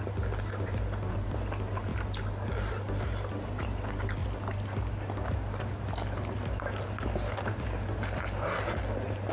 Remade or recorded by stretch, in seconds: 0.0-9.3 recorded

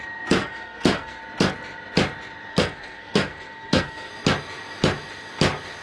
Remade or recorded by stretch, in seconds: 0.0-0.4 recorded; 0.4-1.2 remade; 1.2-2.5 recorded; 2.5-4.1 remade; 4.1-5.8 recorded

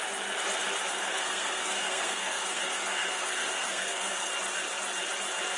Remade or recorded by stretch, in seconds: 0.0-0.9 recorded; 0.9-4.3 remade; 4.3-5.6 recorded

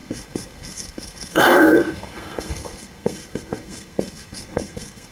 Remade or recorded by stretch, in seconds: 0.0-5.1 remade

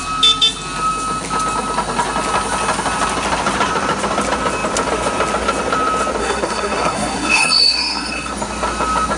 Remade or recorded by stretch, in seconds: 0.0-6.2 recorded; 6.2-8.3 remade; 8.3-9.2 recorded